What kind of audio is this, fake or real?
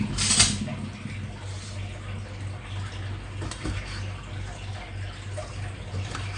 real